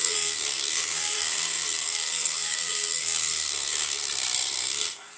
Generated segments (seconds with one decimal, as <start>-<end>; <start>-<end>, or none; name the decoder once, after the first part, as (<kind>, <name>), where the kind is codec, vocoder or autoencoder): 0.0-5.2 (codec, SNAC)